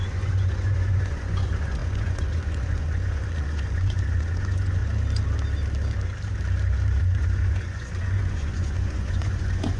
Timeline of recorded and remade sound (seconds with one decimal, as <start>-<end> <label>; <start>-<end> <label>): 0.0-4.8 remade; 4.8-7.0 recorded; 7.0-9.8 remade